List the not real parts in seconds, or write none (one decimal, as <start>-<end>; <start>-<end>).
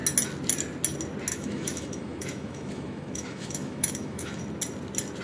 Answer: 1.3-4.4